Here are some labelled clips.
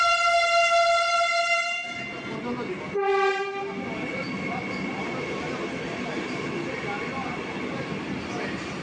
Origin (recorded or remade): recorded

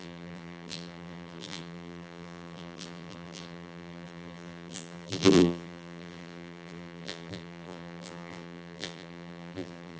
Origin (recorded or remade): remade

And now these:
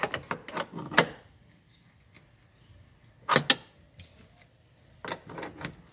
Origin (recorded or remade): recorded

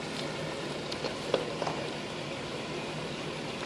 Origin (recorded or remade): remade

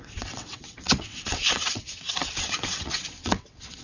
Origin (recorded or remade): remade